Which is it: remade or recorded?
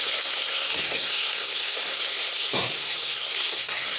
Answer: remade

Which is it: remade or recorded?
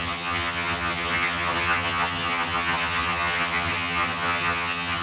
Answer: remade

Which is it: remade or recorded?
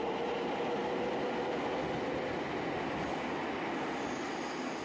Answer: recorded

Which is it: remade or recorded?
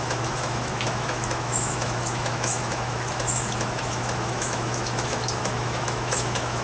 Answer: remade